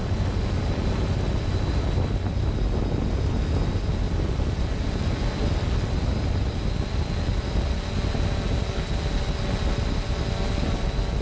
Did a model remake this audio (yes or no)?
no